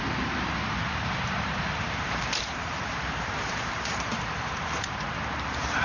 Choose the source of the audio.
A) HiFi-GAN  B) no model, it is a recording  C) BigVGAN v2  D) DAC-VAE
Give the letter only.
C